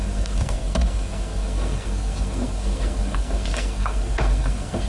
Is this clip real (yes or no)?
no